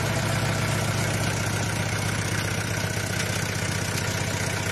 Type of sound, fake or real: real